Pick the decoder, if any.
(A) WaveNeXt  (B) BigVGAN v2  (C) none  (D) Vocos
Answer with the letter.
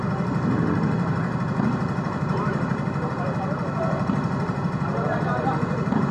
B